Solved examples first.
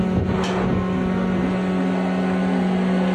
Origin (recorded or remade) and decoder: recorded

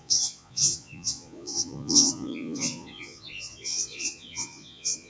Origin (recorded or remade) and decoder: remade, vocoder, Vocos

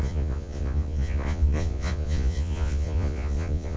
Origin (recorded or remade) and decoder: remade, vocoder, Vocos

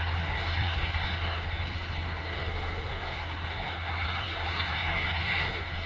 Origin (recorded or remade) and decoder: remade, codec, SNAC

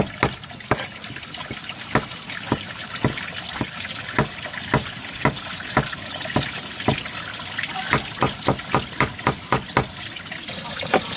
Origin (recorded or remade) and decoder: recorded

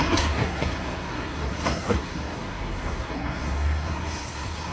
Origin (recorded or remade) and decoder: remade, codec, SNAC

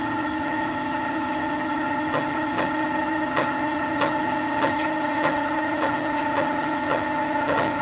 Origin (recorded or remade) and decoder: remade, vocoder, HiFi-GAN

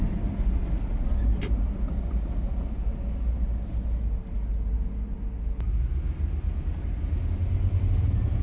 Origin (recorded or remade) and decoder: recorded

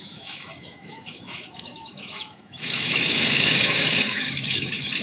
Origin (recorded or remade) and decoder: remade, autoencoder, DAC-VAE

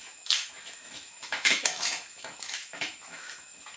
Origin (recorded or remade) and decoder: remade, autoencoder, DAC-VAE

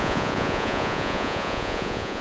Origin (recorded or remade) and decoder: remade, vocoder, Vocos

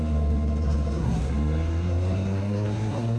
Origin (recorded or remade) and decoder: remade, codec, SNAC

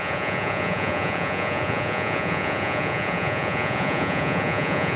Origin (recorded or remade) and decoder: remade, vocoder, Vocos